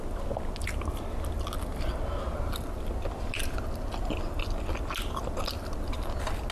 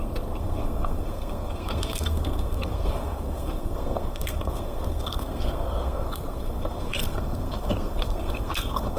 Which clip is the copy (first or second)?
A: second